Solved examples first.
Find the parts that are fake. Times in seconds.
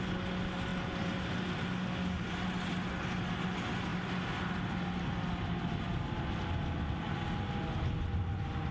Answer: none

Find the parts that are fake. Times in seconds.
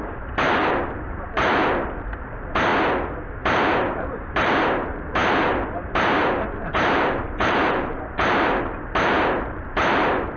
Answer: 0.0-2.7 (vocoder, BigVGAN v2); 3.4-10.4